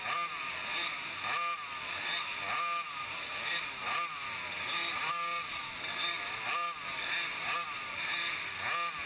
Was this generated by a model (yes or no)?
no